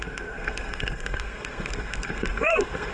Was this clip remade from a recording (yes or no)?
yes